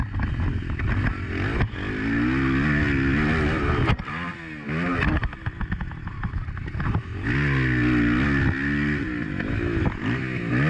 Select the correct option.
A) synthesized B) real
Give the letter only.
B